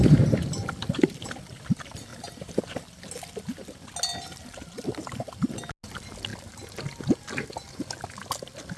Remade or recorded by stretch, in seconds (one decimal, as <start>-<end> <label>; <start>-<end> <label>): 0.0-2.1 recorded; 2.1-2.6 remade; 2.6-8.8 recorded